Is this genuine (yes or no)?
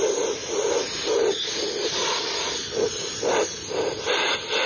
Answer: yes